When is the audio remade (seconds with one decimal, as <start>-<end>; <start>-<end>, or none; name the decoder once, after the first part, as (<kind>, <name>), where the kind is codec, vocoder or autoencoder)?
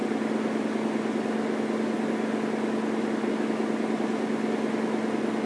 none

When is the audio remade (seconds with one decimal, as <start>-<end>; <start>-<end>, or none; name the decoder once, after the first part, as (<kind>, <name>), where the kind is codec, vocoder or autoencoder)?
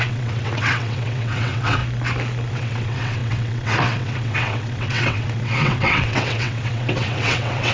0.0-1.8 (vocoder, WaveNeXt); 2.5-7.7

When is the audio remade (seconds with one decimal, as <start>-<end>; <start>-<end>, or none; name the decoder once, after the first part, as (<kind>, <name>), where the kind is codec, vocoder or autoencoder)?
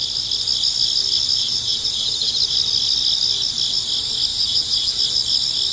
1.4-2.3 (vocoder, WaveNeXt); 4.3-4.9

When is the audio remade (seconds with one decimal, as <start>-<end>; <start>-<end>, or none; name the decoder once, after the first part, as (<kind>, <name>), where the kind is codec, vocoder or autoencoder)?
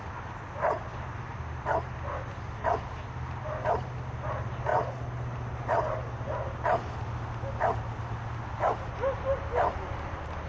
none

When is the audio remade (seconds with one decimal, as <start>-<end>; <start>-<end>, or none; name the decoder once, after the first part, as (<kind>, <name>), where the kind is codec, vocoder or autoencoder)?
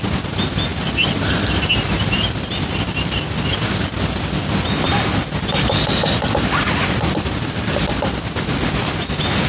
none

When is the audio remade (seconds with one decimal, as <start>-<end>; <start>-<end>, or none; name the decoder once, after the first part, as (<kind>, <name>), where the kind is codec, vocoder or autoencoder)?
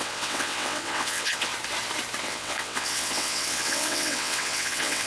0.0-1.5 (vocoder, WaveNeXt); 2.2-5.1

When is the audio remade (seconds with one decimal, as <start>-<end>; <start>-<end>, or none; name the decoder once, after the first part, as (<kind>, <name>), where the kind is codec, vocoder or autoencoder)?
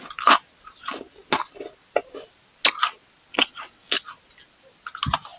3.3-3.9 (vocoder, WaveNeXt)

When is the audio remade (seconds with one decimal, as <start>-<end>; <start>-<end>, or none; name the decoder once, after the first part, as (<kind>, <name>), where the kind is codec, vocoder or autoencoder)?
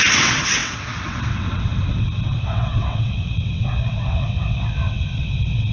0.0-5.7 (vocoder, WaveNeXt)